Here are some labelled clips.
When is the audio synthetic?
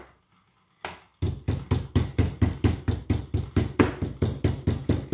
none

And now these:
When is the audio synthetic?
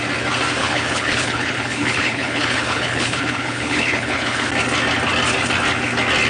0.6-4.4